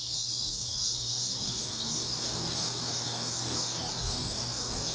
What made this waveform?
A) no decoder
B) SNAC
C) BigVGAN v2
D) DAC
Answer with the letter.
D